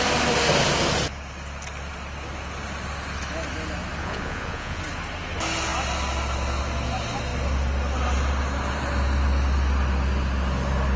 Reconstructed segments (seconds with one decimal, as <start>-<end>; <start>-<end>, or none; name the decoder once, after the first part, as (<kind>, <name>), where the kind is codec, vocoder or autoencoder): 4.0-4.8 (vocoder, Vocos)